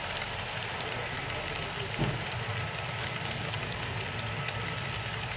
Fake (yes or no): no